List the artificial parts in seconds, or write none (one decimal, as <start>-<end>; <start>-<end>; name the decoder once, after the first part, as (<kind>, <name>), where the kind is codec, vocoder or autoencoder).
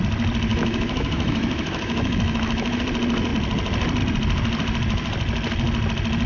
0.5-2.8 (autoencoder, DAC-VAE)